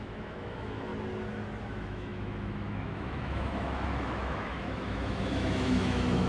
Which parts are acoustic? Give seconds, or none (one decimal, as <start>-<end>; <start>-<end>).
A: 0.9-1.6